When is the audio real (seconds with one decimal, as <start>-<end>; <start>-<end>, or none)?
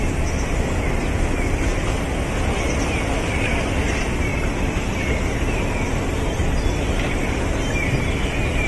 0.0-4.3; 7.4-8.7